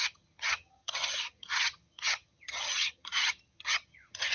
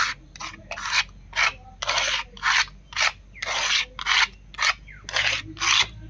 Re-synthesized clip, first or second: first